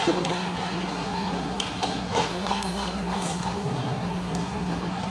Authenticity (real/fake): fake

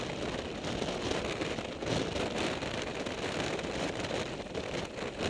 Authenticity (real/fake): real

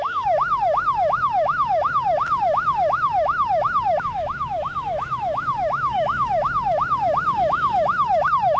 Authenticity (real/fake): fake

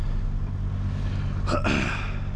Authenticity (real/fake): real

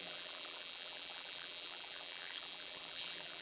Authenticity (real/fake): fake